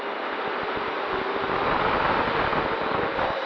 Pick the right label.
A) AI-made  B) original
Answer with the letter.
B